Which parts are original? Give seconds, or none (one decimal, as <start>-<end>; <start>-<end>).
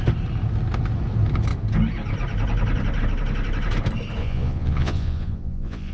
0.0-4.2